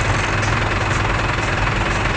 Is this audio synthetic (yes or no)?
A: no